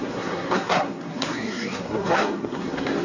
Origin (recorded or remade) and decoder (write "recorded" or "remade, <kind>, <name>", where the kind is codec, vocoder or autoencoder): remade, codec, SNAC